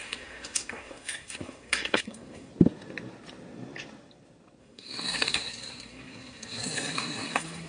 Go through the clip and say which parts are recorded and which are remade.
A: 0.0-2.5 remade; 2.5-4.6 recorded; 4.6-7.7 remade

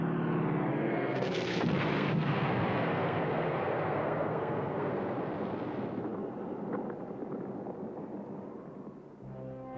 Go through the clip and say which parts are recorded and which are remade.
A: 0.0-0.7 recorded; 0.7-4.9 remade; 4.9-9.8 recorded

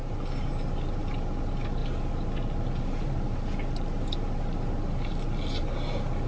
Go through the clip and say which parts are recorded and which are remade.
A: 0.0-6.3 recorded

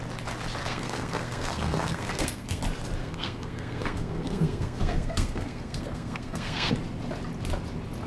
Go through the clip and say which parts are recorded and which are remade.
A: 0.0-0.6 recorded; 0.6-2.6 remade; 2.6-3.0 recorded; 3.0-6.7 remade; 6.7-8.1 recorded

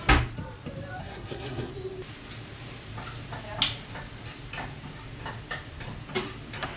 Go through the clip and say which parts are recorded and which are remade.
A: 0.0-1.0 recorded; 1.0-1.7 remade; 1.7-6.8 recorded